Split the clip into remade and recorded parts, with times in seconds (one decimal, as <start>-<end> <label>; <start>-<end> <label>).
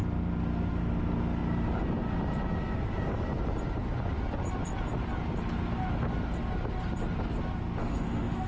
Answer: 0.0-7.8 recorded; 7.8-8.5 remade